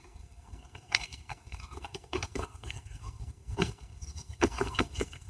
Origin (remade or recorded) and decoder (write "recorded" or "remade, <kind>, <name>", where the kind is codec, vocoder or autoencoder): remade, codec, SNAC